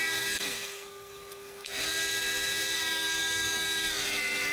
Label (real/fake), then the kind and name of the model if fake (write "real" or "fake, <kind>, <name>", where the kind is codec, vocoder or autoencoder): fake, codec, SNAC